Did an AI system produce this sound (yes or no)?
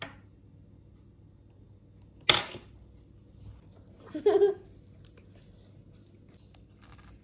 no